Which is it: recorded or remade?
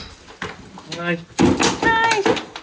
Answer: recorded